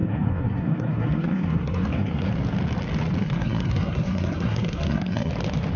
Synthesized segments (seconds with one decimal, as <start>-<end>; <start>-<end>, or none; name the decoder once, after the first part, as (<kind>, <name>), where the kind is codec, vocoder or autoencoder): 0.0-2.3 (codec, SNAC); 3.2-5.3